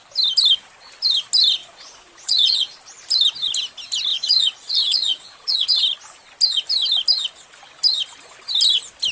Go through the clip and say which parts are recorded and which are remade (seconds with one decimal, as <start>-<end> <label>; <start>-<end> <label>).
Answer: 0.0-1.6 recorded; 1.6-2.7 remade; 2.7-4.1 recorded; 4.1-5.8 remade; 5.8-9.1 recorded